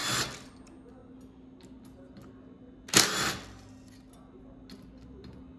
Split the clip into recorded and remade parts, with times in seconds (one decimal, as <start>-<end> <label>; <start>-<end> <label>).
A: 0.0-5.6 recorded